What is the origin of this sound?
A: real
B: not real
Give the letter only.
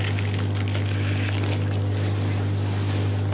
A